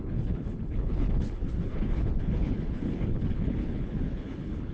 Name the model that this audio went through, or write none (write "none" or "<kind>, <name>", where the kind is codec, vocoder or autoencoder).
codec, HILCodec